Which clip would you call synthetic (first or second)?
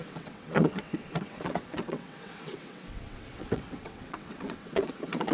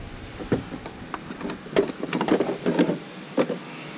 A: first